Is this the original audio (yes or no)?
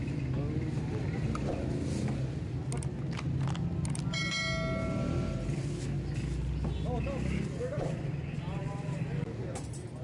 yes